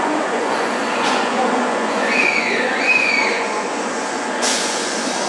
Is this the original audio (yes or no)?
no